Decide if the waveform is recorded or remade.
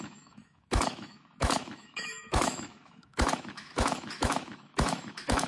remade